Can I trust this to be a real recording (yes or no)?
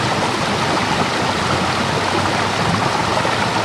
yes